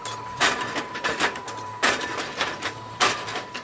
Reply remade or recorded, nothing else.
remade